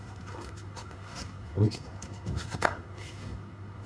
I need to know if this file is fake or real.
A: fake